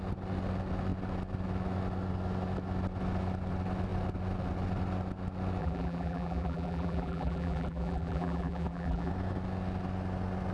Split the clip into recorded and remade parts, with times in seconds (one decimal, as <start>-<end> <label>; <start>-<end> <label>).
0.0-5.6 recorded; 5.6-9.1 remade; 9.1-10.5 recorded